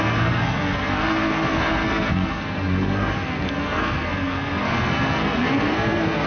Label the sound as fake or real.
fake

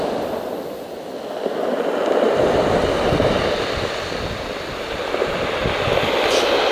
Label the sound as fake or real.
real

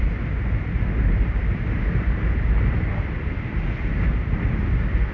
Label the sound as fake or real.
real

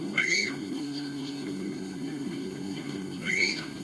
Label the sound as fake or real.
fake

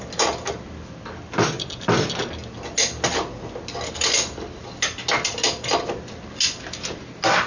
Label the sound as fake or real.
real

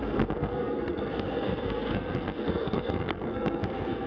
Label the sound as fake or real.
fake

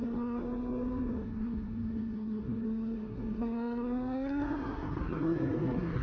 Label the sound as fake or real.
fake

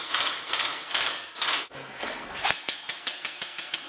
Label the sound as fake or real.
fake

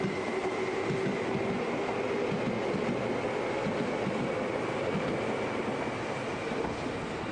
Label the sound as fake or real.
real